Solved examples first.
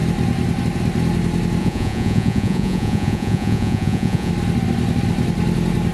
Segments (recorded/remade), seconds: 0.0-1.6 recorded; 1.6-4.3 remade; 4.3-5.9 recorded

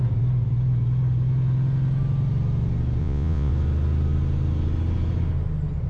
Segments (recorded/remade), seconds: 0.0-3.0 recorded; 3.0-3.5 remade; 3.5-5.9 recorded

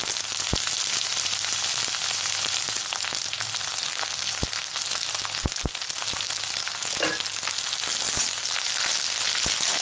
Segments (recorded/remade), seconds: 0.0-9.8 recorded

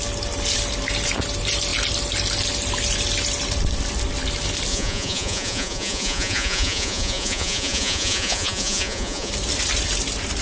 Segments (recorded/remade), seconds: 0.0-4.7 recorded; 4.7-9.3 remade; 9.3-10.4 recorded

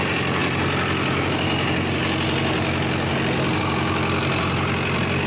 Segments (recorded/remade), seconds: 0.0-5.3 recorded

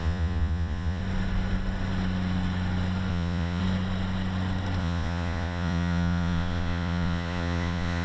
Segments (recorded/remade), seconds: 0.0-1.0 remade; 1.0-3.1 recorded; 3.1-3.6 remade; 3.6-4.8 recorded; 4.8-8.0 remade

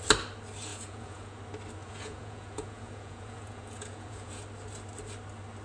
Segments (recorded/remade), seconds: 0.0-0.7 recorded; 0.7-1.4 remade; 1.4-1.8 recorded; 1.8-4.4 remade; 4.4-5.6 recorded